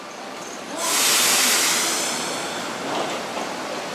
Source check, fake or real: real